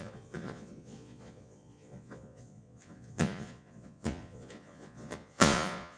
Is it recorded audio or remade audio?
remade